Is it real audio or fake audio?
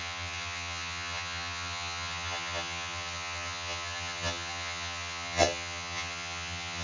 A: fake